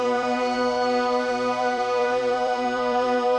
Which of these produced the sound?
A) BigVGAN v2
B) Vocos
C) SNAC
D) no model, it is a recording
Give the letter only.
A